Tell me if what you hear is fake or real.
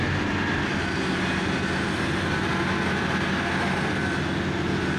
real